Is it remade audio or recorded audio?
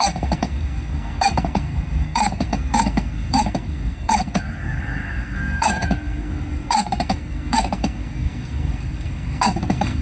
remade